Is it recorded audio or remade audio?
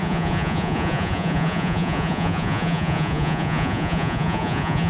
remade